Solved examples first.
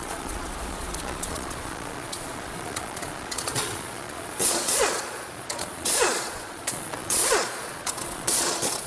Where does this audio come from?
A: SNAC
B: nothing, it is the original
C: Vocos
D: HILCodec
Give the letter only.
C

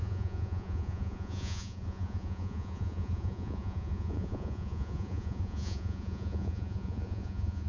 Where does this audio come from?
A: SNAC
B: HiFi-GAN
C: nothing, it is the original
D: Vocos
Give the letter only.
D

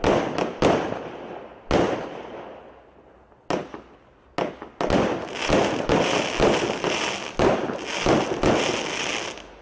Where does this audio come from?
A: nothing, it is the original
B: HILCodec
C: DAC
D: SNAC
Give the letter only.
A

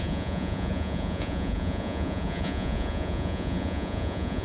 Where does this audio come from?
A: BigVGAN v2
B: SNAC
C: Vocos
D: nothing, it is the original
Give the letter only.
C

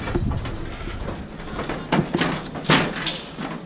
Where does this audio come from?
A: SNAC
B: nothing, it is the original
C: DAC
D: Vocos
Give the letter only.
B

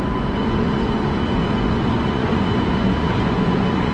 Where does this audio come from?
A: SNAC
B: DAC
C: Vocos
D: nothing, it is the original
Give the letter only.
C